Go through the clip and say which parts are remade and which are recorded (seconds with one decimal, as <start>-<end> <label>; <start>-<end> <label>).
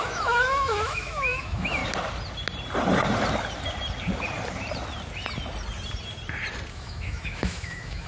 0.0-1.8 remade; 1.8-6.7 recorded; 6.7-8.1 remade